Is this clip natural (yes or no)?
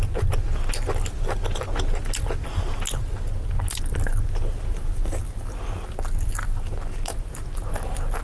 yes